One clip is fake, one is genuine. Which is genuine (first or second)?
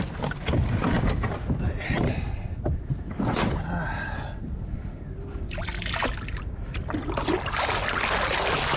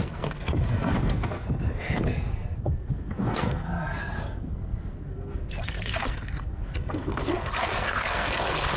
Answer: first